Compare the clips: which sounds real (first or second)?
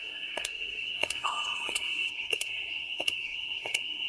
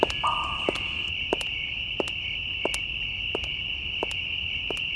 second